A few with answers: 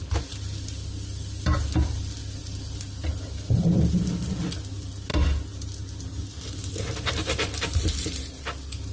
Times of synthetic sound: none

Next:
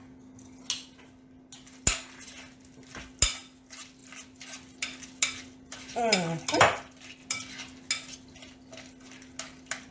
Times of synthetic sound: none

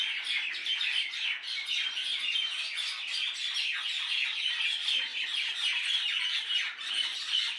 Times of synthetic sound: none

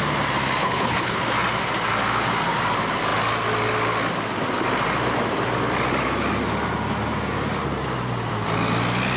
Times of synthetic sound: 0.6-1.2